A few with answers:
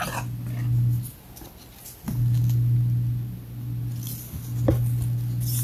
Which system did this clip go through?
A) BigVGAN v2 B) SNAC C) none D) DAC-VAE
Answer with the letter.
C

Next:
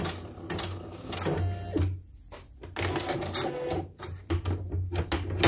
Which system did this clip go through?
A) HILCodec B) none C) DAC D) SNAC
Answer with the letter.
B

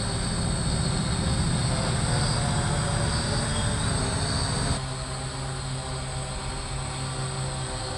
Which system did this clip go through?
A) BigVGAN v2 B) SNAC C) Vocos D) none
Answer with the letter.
D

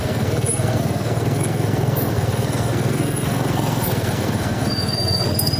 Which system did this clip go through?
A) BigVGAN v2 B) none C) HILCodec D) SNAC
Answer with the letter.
D